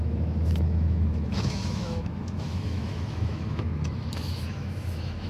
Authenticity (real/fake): fake